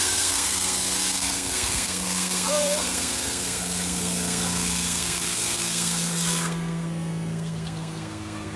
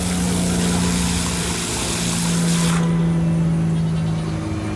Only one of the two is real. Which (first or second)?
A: second